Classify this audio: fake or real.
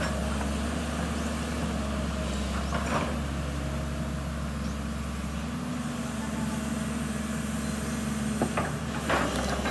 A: real